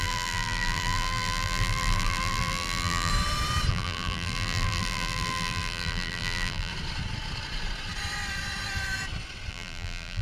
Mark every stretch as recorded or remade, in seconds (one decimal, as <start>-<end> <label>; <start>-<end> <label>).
0.0-3.1 remade; 3.1-3.7 recorded; 3.7-6.7 remade; 6.7-9.5 recorded; 9.5-10.2 remade